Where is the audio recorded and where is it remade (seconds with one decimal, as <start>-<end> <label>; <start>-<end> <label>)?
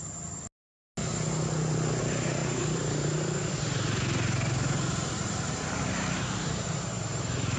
0.0-2.0 recorded; 2.0-7.6 remade